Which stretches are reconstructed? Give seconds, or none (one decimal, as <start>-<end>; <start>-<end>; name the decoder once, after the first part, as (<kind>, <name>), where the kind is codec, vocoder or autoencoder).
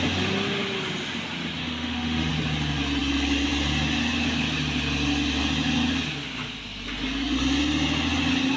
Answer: 1.6-2.3 (autoencoder, DAC-VAE)